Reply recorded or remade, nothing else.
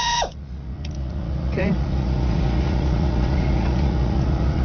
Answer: remade